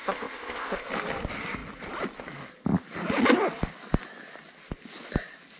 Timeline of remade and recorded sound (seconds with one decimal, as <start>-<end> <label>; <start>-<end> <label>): 0.0-0.9 remade; 0.9-5.6 recorded